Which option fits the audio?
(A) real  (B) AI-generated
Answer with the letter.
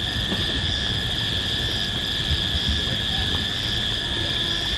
A